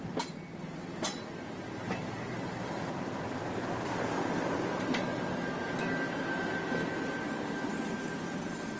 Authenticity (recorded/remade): recorded